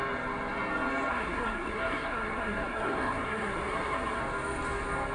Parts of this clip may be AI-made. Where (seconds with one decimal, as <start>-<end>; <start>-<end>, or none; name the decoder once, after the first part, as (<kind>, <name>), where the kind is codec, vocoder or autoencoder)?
1.1-4.2 (codec, SNAC)